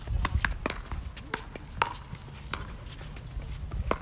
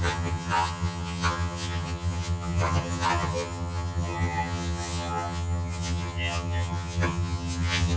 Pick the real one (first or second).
first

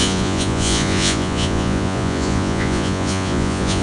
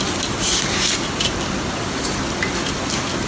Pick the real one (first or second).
second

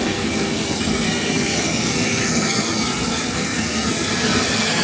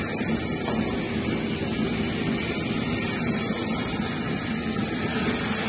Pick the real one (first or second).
second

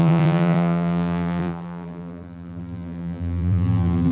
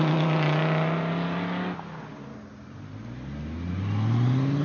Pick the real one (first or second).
second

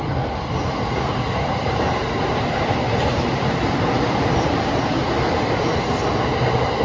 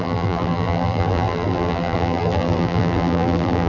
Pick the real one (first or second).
first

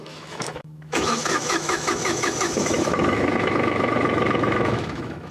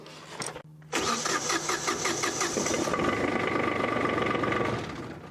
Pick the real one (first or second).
second